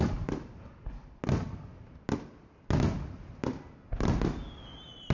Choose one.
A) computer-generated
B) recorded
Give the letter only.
B